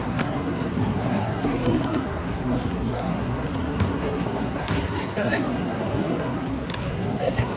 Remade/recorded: remade